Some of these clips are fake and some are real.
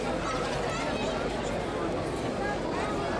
real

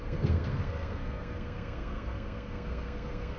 fake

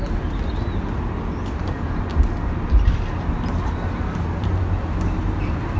real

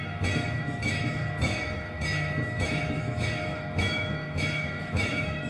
fake